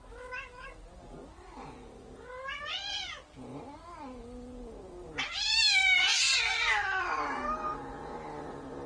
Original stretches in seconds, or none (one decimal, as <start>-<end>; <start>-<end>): 0.0-8.9